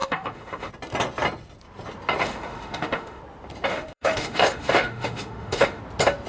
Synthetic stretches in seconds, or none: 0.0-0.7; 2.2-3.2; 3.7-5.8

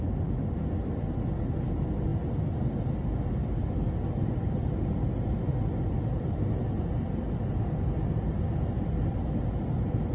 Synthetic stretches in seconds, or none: none

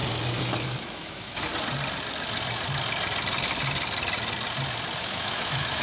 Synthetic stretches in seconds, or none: 0.8-1.5; 5.0-5.8

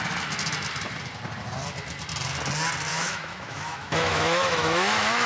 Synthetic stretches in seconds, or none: 2.9-5.3